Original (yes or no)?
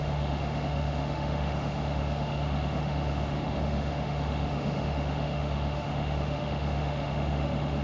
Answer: no